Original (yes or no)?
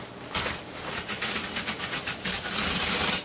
yes